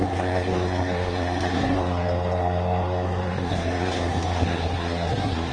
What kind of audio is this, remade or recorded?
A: remade